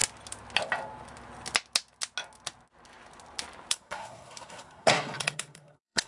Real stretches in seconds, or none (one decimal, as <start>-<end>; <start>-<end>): 0.0-3.7